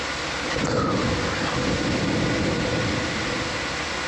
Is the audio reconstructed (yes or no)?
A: no